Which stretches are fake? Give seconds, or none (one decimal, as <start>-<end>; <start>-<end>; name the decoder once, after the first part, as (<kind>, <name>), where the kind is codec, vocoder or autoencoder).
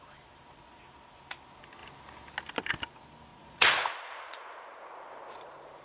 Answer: 3.3-4.6 (vocoder, Vocos)